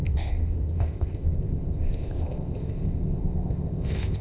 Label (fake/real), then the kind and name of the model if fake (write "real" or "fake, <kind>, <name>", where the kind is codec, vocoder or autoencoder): fake, codec, ZipCodec